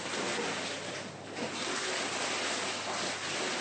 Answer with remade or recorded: recorded